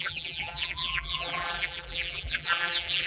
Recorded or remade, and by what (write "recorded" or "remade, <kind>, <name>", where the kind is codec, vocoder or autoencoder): remade, vocoder, BigVGAN v2